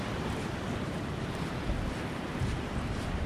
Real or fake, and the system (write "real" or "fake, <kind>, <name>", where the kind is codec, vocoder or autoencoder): real